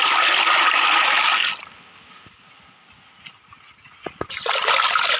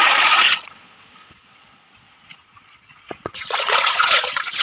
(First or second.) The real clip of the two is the first